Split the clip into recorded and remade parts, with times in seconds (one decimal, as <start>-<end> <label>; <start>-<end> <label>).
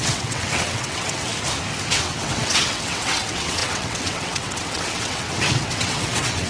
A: 0.0-1.3 remade; 1.3-1.9 recorded; 1.9-6.5 remade